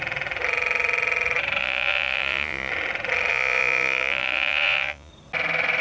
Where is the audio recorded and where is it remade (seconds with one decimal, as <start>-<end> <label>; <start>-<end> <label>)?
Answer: 0.0-1.6 recorded; 1.6-2.7 remade; 2.7-3.3 recorded; 3.3-5.1 remade; 5.1-5.8 recorded